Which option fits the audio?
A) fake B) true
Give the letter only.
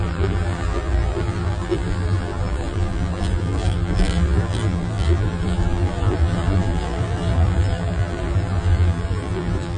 A